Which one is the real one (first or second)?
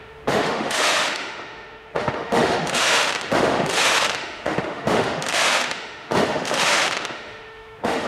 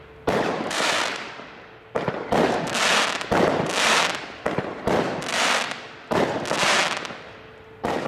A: second